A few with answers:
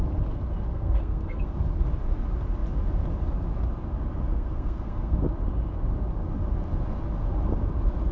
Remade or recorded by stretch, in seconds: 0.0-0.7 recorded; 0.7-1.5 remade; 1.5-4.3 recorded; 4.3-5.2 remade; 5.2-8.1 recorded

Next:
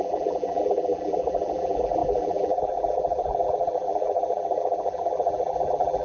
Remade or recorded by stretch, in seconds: 0.0-6.0 remade

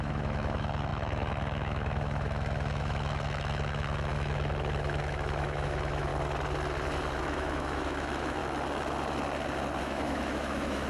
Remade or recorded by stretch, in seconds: 0.0-6.1 remade; 6.1-7.2 recorded; 7.2-8.4 remade; 8.4-9.8 recorded; 9.8-10.9 remade